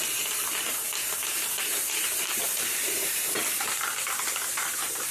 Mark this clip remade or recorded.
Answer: remade